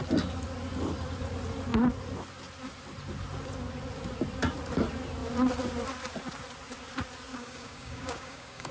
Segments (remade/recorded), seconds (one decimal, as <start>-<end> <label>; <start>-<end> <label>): 0.0-7.3 recorded; 7.3-8.7 remade

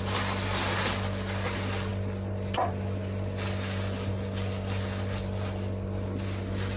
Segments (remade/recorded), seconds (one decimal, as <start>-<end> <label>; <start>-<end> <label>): 0.0-6.8 recorded

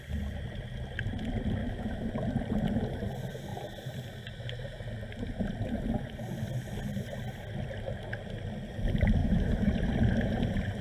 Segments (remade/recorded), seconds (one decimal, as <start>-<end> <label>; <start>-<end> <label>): 0.0-1.6 recorded; 1.6-2.1 remade; 2.1-9.2 recorded; 9.2-9.7 remade; 9.7-10.8 recorded